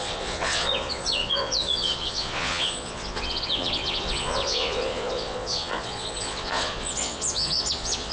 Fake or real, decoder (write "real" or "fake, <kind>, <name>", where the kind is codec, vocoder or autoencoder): fake, vocoder, Vocos